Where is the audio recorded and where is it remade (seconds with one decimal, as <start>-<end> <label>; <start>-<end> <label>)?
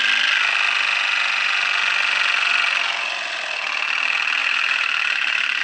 0.0-4.4 recorded; 4.4-5.6 remade